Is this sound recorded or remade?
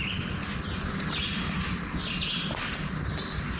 recorded